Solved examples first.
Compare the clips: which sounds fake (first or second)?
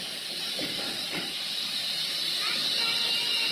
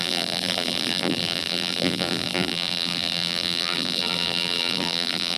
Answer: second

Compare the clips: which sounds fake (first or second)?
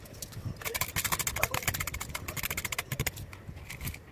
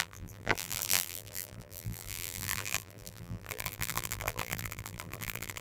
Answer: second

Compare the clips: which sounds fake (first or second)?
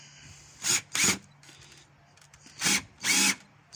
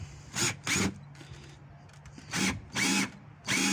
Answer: first